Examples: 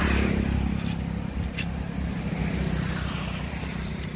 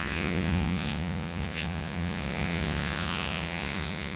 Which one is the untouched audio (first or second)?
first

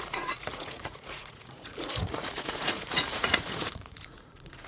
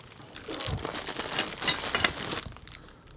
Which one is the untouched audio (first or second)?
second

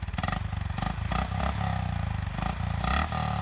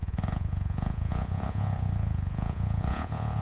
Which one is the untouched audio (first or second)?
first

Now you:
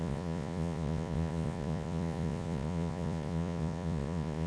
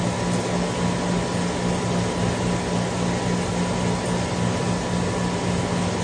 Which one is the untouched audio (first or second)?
second